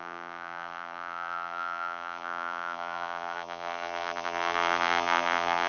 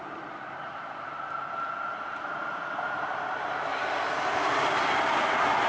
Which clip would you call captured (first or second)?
second